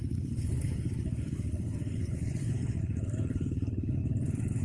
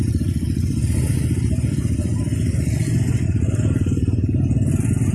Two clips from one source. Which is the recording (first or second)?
second